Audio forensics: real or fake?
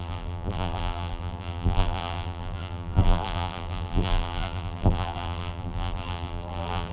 fake